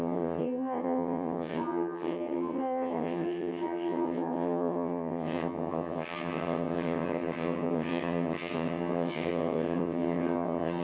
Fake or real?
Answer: fake